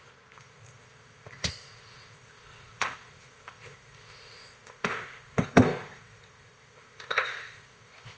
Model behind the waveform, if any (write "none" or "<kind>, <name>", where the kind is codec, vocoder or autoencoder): codec, ZipCodec